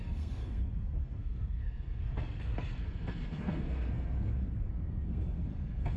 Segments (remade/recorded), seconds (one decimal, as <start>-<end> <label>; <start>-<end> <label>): 0.0-6.0 remade